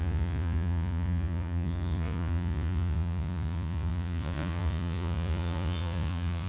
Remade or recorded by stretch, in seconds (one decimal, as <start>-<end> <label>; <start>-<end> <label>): 0.0-6.5 remade